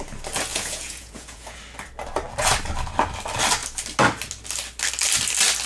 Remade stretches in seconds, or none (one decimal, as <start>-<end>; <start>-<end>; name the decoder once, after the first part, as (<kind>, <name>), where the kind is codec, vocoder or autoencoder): 0.5-1.6 (vocoder, Vocos)